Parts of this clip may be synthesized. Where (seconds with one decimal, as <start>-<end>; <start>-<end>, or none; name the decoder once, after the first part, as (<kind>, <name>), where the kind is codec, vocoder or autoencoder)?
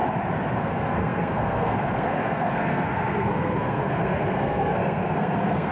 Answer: 0.6-5.7 (codec, SNAC)